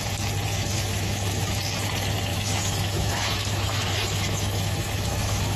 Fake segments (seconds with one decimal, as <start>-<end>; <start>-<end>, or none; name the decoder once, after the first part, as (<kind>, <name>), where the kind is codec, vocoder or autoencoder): 0.5-1.6 (autoencoder, DAC-VAE); 2.3-5.6